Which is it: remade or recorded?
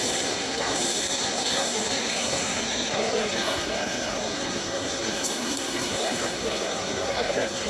remade